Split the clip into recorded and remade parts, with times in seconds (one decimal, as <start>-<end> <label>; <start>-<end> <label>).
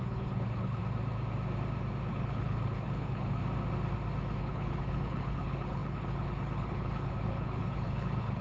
0.0-0.8 remade; 0.8-2.1 recorded; 2.1-3.4 remade; 3.4-4.4 recorded; 4.4-8.4 remade